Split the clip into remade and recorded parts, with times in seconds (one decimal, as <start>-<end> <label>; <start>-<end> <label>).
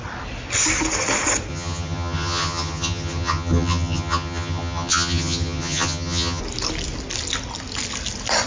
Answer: 0.0-1.5 recorded; 1.5-6.4 remade; 6.4-8.5 recorded